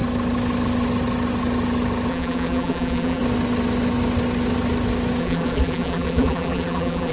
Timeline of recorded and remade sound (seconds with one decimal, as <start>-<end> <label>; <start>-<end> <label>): 0.0-2.1 recorded; 2.1-3.2 remade; 3.2-5.2 recorded; 5.2-7.1 remade